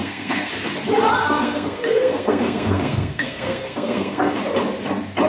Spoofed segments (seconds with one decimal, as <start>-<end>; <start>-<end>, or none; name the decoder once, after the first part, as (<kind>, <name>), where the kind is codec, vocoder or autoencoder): 0.0-0.5 (codec, SNAC); 1.2-4.4